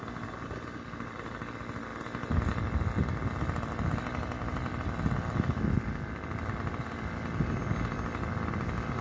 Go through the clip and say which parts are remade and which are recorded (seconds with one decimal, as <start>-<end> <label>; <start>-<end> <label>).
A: 0.0-9.0 recorded